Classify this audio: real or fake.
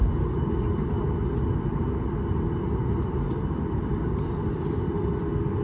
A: real